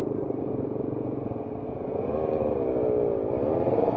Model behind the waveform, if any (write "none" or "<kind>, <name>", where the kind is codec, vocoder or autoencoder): none